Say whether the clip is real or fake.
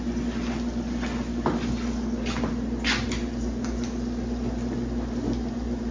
real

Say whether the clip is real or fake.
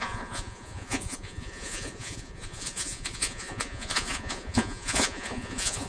fake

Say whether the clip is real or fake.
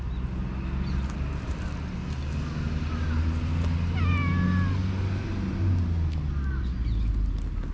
real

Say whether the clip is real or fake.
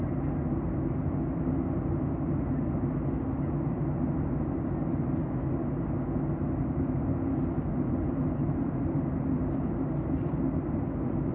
real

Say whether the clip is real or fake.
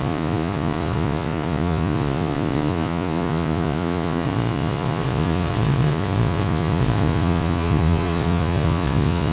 fake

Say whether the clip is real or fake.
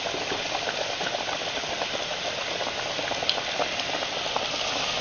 real